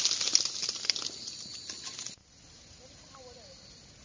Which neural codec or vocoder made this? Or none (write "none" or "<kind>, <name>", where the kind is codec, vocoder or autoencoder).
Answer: none